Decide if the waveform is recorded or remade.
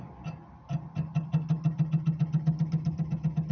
recorded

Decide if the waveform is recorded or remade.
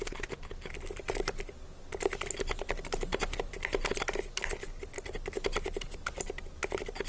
recorded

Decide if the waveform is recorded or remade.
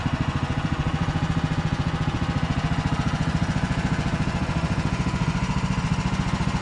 remade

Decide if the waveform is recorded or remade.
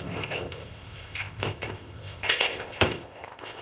remade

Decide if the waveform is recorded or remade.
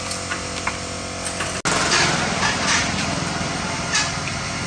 recorded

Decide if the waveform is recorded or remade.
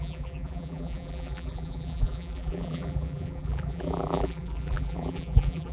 remade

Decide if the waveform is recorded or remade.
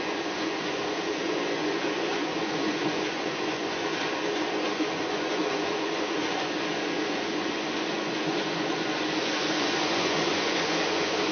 remade